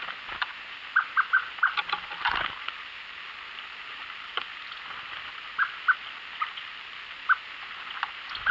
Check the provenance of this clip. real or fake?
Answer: real